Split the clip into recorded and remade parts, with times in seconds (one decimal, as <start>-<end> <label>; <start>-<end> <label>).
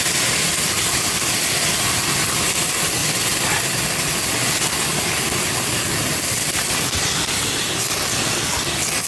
0.0-9.1 recorded